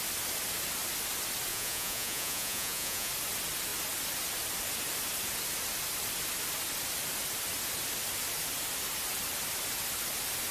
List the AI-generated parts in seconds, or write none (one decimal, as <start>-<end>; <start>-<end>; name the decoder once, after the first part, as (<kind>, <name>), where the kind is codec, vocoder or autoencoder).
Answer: 1.5-3.1 (vocoder, Vocos)